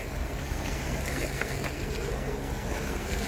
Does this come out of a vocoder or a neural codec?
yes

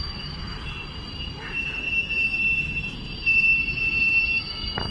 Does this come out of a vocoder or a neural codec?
no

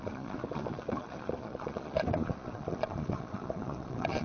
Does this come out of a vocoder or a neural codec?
yes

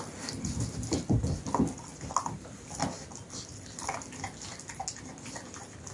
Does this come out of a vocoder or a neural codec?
no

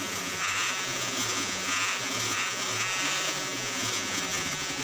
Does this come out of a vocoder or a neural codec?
yes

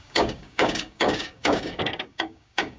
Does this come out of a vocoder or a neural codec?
yes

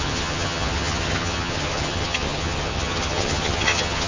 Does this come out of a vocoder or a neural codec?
yes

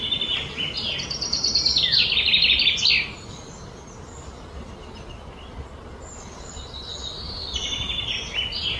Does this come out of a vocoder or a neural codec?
no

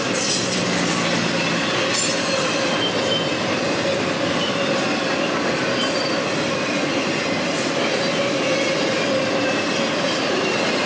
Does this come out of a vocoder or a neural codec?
no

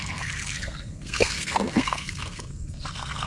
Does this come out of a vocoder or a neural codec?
yes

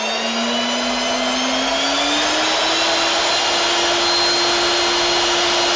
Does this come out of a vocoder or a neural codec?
no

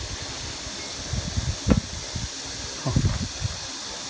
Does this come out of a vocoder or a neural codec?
no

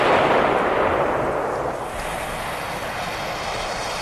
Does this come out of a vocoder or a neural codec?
no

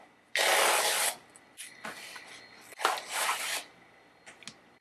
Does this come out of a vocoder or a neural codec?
no